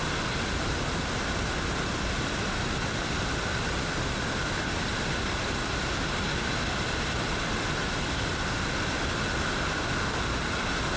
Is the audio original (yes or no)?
yes